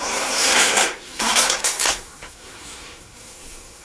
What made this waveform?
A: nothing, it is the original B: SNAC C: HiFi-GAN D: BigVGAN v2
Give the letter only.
B